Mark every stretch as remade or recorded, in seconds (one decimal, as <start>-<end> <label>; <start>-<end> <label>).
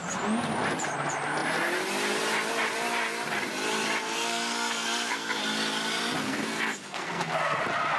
0.0-4.0 recorded; 4.0-5.4 remade; 5.4-6.2 recorded; 6.2-7.6 remade; 7.6-8.0 recorded